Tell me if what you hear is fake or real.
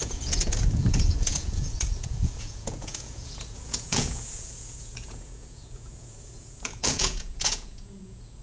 fake